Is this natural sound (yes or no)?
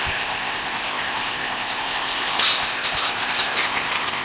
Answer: no